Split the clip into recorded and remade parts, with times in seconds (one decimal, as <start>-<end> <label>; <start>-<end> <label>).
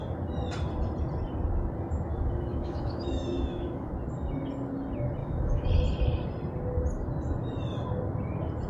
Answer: 0.0-2.1 recorded; 2.1-3.9 remade; 3.9-5.2 recorded; 5.2-5.7 remade; 5.7-8.7 recorded